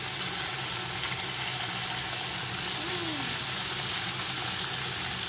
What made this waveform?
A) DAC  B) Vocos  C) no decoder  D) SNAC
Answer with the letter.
C